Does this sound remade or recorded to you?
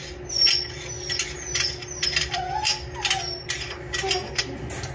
recorded